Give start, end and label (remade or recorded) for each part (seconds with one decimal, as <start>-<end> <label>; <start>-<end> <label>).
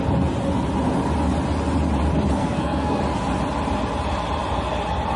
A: 0.0-2.4 recorded; 2.4-3.0 remade; 3.0-5.2 recorded